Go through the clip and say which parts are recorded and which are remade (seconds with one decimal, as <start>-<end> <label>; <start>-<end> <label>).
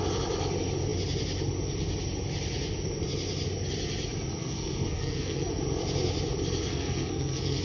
0.0-4.4 recorded; 4.4-5.5 remade; 5.5-6.7 recorded; 6.7-7.6 remade